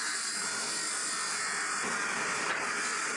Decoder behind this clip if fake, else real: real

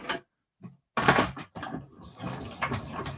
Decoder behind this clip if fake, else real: real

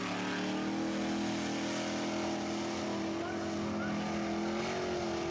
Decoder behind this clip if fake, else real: real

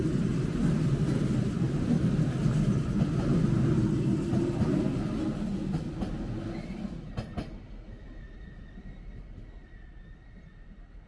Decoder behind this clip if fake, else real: real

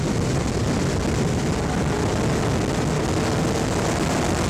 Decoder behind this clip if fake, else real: real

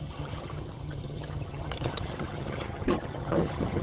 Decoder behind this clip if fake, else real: fake, vocoder, HiFi-GAN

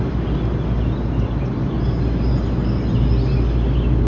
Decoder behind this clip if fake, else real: real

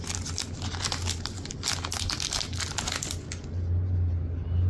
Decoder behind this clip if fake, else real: real